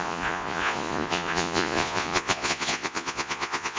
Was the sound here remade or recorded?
remade